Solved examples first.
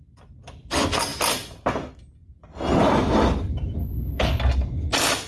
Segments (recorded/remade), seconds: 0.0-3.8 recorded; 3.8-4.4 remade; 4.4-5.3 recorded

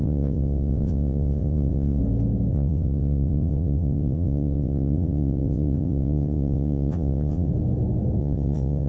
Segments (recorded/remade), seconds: 0.0-2.0 remade; 2.0-2.5 recorded; 2.5-7.5 remade; 7.5-8.2 recorded; 8.2-8.9 remade

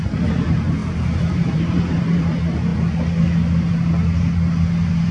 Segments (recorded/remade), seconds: 0.0-2.7 remade; 2.7-5.1 recorded